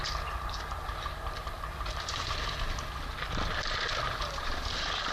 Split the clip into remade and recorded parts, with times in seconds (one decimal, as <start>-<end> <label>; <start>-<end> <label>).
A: 0.0-5.1 recorded